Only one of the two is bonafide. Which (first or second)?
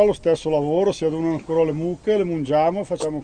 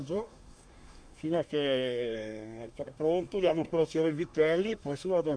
first